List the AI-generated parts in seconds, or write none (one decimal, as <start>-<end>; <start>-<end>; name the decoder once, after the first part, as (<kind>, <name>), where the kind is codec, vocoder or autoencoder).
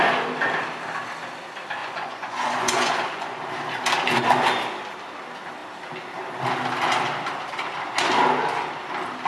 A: 1.8-3.4 (vocoder, Vocos)